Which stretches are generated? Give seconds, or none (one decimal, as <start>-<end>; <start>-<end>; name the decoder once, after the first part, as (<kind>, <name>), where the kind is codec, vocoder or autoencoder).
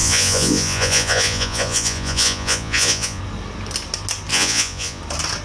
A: 0.0-3.2 (vocoder, Vocos); 4.3-5.0